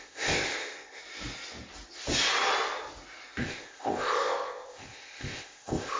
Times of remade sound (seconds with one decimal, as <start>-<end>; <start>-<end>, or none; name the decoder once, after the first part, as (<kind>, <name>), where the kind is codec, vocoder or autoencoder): 0.0-1.0 (codec, ZipCodec); 3.4-6.0